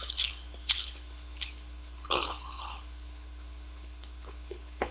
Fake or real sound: fake